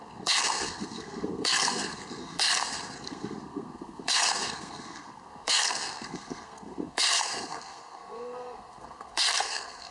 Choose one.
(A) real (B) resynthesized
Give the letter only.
B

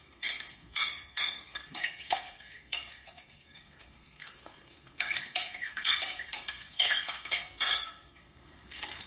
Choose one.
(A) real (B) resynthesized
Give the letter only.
B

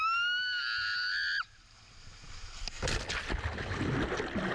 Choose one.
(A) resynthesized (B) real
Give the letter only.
B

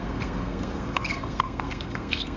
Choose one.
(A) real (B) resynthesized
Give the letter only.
B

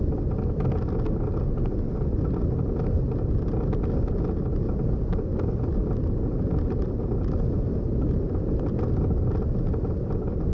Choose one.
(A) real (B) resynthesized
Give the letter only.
A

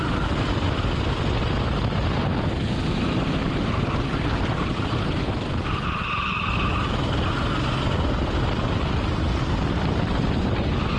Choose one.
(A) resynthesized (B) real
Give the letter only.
B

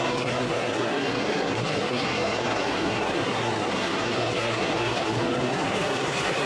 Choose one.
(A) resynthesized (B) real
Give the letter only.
A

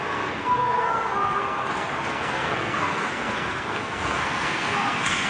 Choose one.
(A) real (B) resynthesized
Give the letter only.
B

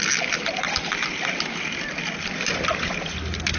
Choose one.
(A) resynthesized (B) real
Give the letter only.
B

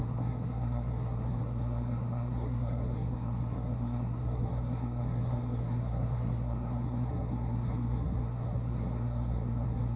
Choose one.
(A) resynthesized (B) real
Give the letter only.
A